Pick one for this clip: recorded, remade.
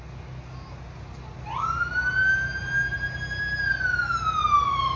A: recorded